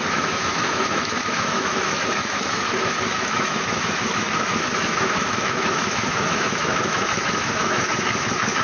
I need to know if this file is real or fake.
fake